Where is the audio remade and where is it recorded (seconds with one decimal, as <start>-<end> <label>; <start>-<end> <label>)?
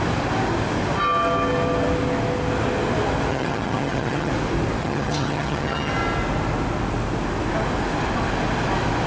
0.0-3.3 recorded; 3.3-4.3 remade; 4.3-4.8 recorded; 4.8-5.9 remade; 5.9-9.1 recorded